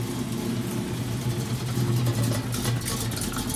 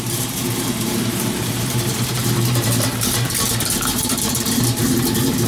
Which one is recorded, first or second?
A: first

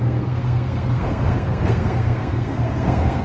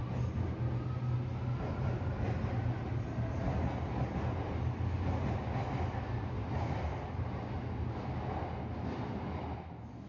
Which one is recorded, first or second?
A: second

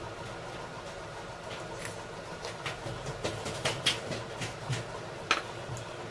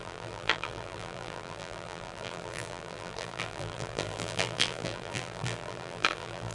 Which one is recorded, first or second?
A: first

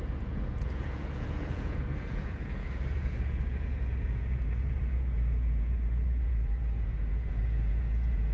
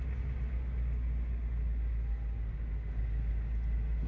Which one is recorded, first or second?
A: second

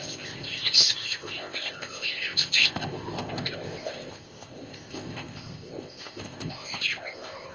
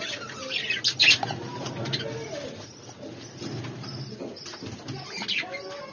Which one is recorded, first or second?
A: second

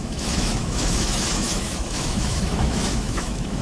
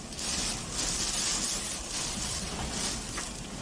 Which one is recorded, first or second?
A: second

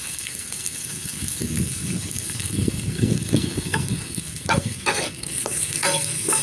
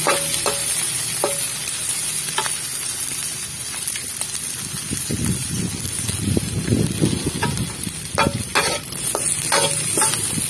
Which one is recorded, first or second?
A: second